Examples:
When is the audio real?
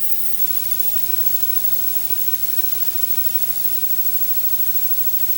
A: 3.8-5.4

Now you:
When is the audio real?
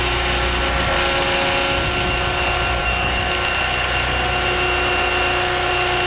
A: 0.0-2.8; 3.3-6.1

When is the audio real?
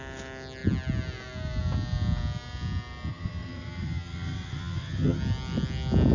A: 0.0-3.1; 5.2-6.1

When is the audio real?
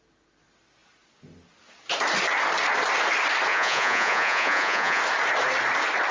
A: 0.0-3.5; 5.0-6.1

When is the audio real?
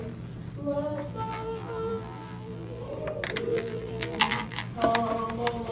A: 0.0-1.1; 2.8-3.5; 4.7-5.7